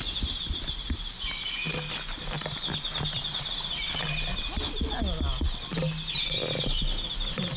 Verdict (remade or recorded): recorded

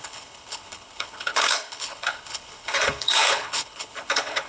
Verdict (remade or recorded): remade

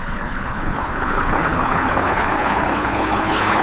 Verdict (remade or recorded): remade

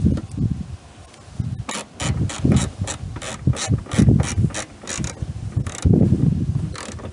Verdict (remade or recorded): recorded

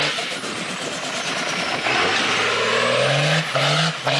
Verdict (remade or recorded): recorded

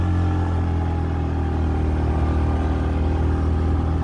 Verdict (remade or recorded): recorded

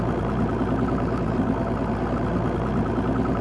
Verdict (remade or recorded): recorded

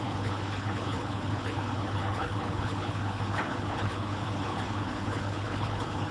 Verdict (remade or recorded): remade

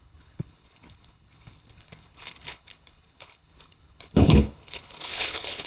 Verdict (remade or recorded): remade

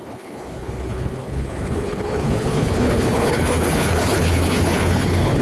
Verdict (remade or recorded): remade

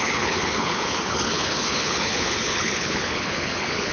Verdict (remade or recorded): remade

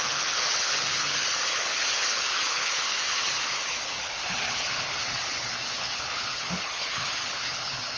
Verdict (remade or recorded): remade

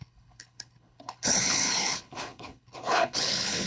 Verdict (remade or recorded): remade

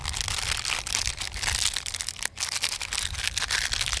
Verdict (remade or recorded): recorded